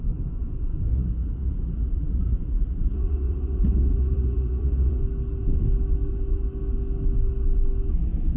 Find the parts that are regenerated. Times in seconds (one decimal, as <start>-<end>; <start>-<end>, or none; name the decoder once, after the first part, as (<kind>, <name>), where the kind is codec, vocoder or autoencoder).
0.9-5.0 (vocoder, Vocos)